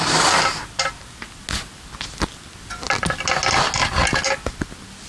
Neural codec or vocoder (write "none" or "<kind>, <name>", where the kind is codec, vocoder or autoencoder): none